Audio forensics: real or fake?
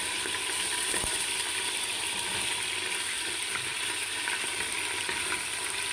real